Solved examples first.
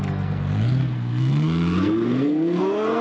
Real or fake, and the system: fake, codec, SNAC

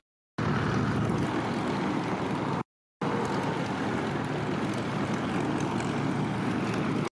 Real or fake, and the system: real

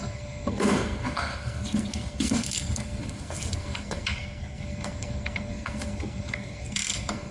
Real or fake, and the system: fake, codec, SNAC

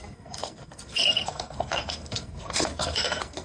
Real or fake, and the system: fake, codec, SNAC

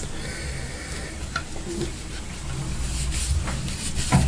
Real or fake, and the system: real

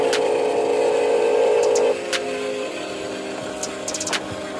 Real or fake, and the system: real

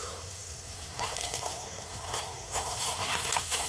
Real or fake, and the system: fake, codec, SNAC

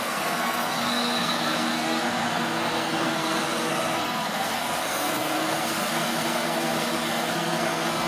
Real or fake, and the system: fake, codec, SNAC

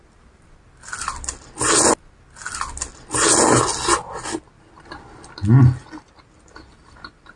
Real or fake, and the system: real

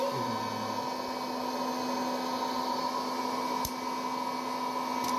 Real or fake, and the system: real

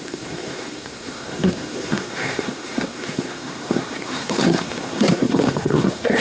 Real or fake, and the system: fake, codec, SNAC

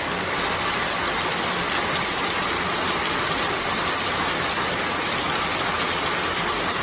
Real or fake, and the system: real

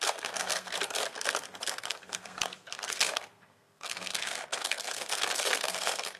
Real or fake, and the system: fake, codec, SNAC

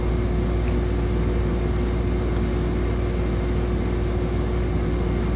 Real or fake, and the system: real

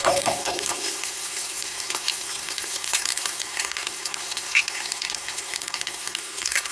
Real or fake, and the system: fake, codec, SNAC